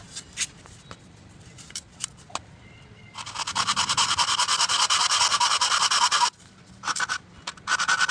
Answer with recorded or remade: recorded